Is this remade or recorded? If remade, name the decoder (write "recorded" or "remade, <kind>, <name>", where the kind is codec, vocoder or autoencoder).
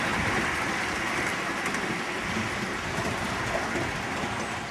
recorded